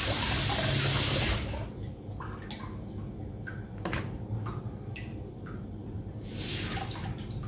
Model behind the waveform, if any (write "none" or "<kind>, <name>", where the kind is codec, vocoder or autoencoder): none